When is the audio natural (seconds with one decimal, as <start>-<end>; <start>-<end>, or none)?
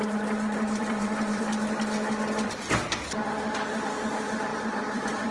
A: 1.5-4.1